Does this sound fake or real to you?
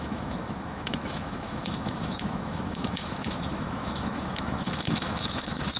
fake